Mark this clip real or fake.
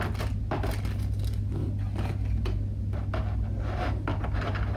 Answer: real